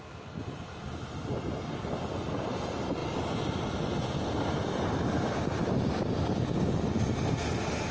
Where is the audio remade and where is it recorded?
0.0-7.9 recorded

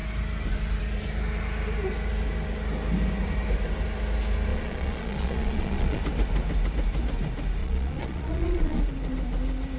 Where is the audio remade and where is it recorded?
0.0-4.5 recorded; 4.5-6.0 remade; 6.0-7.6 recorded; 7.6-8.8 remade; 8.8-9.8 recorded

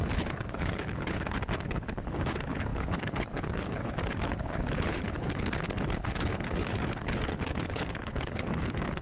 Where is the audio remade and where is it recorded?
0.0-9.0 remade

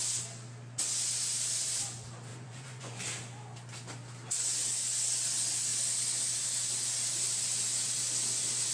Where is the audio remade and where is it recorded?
0.0-2.3 recorded; 2.3-3.0 remade; 3.0-8.7 recorded